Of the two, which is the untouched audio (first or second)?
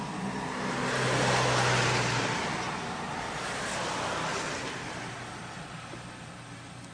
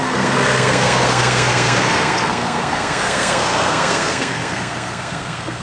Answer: first